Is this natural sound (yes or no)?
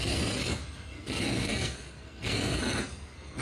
no